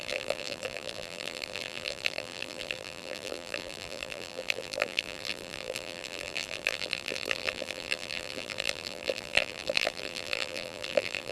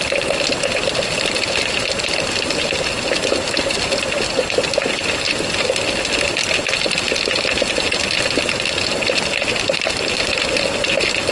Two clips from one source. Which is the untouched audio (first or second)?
second